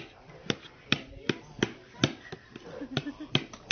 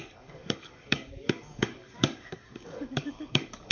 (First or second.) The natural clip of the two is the first